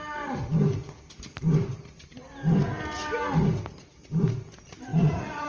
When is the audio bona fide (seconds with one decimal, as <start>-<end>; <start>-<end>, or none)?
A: 0.0-4.9